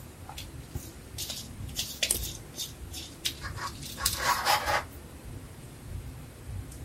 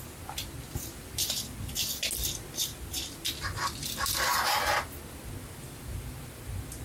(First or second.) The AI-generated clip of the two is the first